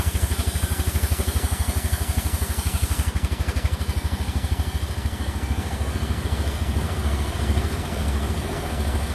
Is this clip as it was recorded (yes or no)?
no